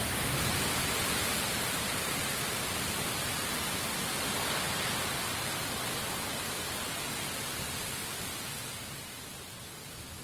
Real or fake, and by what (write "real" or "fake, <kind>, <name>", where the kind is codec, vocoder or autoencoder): real